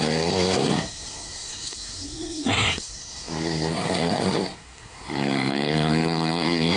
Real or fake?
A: fake